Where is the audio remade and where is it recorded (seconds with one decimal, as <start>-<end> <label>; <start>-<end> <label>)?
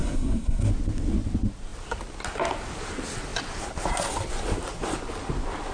0.0-0.7 remade; 0.7-5.7 recorded